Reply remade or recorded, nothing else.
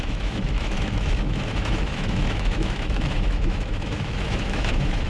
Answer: remade